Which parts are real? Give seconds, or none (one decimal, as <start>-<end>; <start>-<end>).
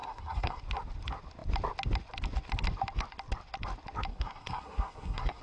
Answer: 0.6-4.1